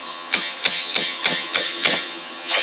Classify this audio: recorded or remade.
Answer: remade